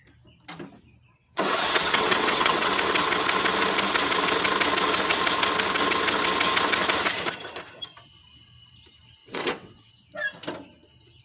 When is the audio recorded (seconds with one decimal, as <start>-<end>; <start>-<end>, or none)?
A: 0.0-1.2; 2.7-9.2; 9.9-11.2